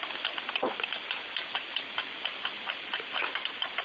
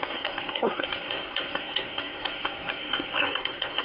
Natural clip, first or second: first